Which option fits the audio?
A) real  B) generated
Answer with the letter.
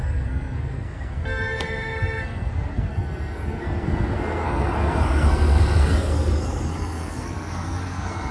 B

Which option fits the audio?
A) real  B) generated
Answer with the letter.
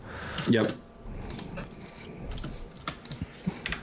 A